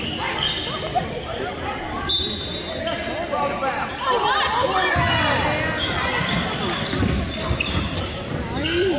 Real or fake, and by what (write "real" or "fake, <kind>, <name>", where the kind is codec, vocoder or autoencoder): real